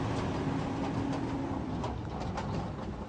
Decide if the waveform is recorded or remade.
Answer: recorded